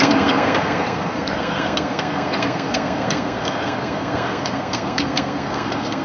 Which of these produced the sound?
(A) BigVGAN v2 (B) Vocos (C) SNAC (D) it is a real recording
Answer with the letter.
C